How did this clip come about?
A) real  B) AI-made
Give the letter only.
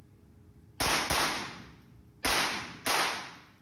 A